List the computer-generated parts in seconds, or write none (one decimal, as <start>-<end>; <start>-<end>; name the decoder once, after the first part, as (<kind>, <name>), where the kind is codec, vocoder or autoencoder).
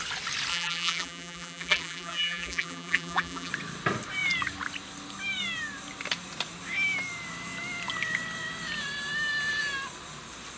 0.5-3.5 (vocoder, BigVGAN v2)